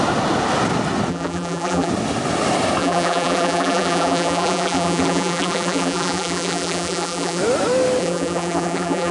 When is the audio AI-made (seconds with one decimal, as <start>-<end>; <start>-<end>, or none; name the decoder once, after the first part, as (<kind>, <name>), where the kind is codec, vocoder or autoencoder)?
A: 1.1-1.9 (vocoder, BigVGAN v2); 2.8-7.4; 8.0-9.1